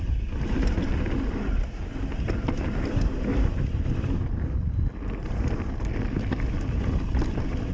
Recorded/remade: recorded